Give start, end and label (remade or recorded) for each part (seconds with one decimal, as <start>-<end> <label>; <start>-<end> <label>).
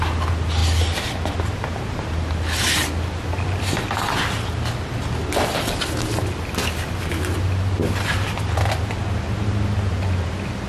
0.0-10.7 recorded